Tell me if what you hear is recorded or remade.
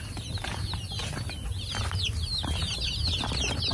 recorded